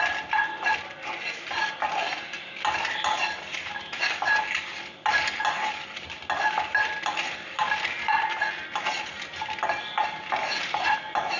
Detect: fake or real real